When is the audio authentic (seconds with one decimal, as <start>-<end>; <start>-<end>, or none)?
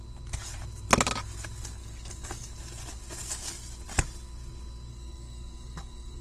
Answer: 0.0-1.8; 2.5-4.9